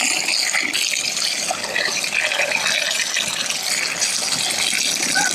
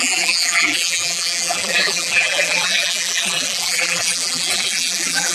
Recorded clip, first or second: first